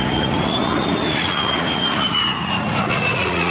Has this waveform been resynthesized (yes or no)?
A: yes